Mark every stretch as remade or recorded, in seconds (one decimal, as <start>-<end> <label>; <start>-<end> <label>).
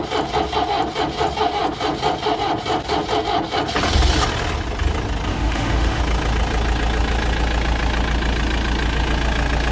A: 0.0-5.3 recorded; 5.3-6.0 remade; 6.0-9.7 recorded